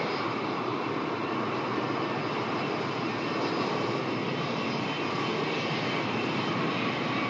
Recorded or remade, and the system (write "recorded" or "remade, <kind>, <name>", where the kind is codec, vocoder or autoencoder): recorded